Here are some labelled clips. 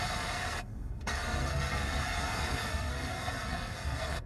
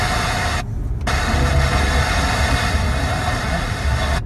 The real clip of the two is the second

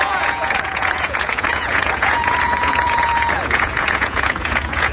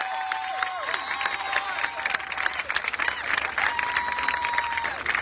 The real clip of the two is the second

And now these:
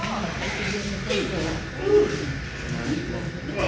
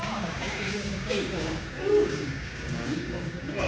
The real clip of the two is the first